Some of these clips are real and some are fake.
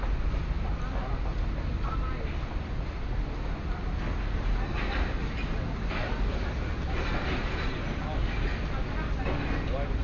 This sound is real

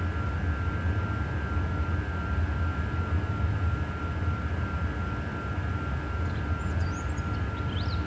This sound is real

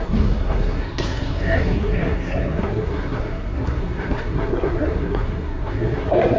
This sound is fake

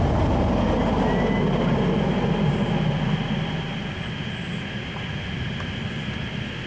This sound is real